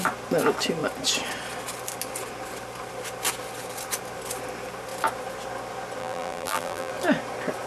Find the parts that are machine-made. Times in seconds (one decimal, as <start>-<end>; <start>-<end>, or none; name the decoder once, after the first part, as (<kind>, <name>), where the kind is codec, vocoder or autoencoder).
6.0-6.9 (vocoder, BigVGAN v2)